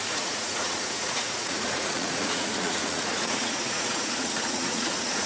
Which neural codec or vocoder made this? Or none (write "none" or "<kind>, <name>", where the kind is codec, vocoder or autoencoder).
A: vocoder, Vocos